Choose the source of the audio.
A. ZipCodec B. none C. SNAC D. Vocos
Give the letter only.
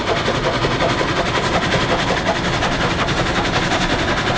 B